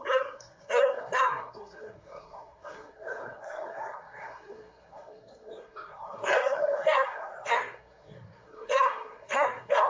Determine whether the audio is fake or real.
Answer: fake